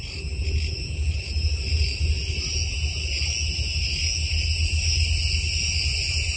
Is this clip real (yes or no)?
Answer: yes